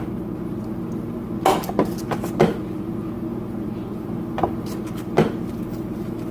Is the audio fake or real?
real